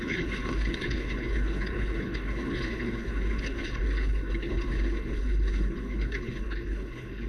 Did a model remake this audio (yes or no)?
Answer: yes